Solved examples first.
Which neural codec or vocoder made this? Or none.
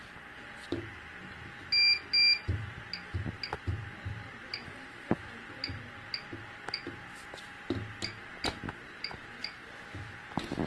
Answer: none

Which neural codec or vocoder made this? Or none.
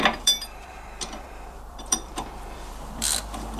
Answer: vocoder, BigVGAN v2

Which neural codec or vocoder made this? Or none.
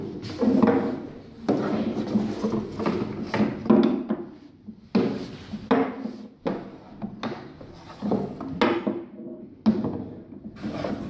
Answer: none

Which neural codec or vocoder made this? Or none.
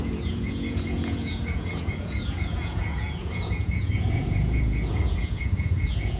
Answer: vocoder, Vocos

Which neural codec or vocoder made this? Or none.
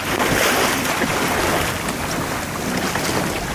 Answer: none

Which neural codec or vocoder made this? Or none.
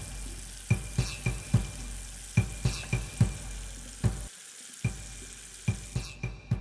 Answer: none